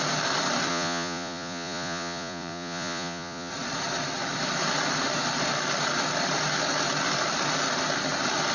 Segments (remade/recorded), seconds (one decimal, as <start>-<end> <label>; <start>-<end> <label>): 0.0-0.7 recorded; 0.7-3.5 remade; 3.5-8.5 recorded